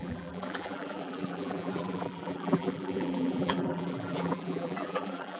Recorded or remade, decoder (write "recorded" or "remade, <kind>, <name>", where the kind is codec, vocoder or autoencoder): remade, vocoder, BigVGAN v2